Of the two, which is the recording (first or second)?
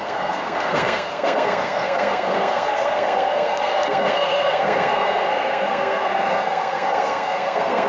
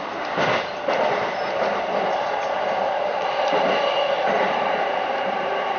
second